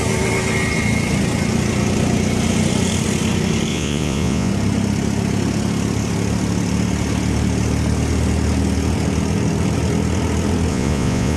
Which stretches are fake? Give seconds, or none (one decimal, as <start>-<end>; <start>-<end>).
3.7-4.5; 10.7-11.4